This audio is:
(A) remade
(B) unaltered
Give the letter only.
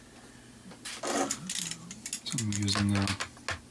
B